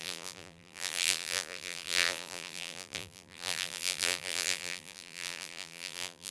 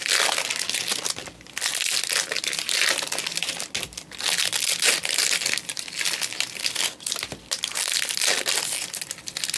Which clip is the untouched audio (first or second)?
second